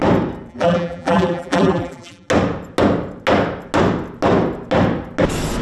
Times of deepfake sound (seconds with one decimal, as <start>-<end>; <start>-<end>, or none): 0.5-2.3

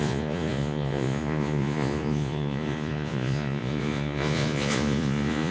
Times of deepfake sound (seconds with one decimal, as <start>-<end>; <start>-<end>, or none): 0.0-5.5

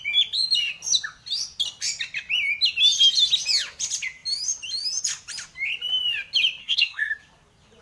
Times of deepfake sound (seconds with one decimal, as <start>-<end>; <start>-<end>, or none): 6.6-7.1